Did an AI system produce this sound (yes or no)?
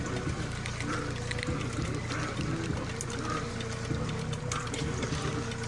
no